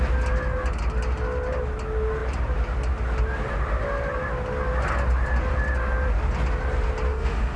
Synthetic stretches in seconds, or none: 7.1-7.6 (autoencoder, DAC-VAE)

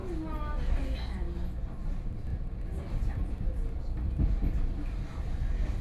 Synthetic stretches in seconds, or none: none

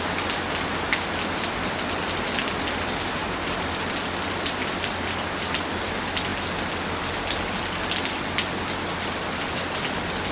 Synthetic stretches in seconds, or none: none

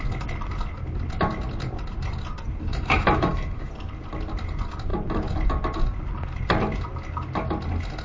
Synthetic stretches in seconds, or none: 2.7-3.7 (autoencoder, DAC-VAE)

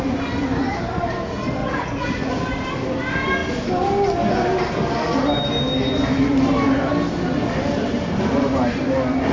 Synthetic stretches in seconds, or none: 1.6-2.3 (vocoder, Vocos)

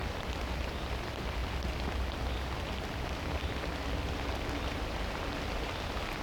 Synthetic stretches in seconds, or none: 0.0-1.4 (vocoder, BigVGAN v2); 5.1-6.2

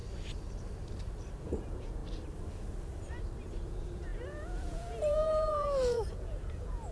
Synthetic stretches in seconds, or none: 1.4-2.0 (vocoder, Vocos); 3.6-6.9

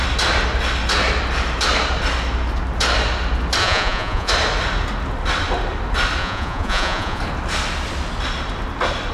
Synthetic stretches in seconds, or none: 3.6-4.3 (vocoder, Vocos); 6.2-7.2